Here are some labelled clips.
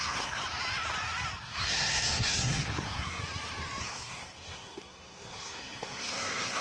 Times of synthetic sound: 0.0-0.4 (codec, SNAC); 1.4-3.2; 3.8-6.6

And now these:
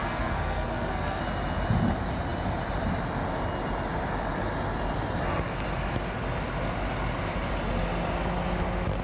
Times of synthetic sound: 0.0-1.2 (codec, SNAC)

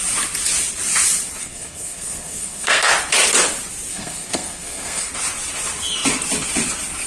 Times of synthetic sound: 1.4-2.9 (codec, SNAC); 3.9-5.1

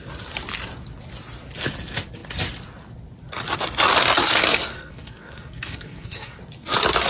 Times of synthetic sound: 4.7-6.4 (codec, SNAC)